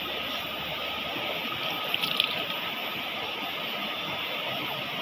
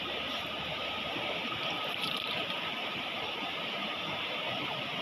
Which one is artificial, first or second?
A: second